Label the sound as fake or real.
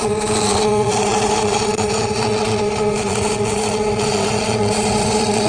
fake